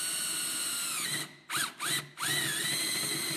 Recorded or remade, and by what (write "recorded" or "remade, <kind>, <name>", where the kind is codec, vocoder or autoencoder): recorded